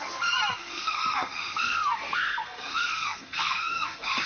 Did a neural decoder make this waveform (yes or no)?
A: yes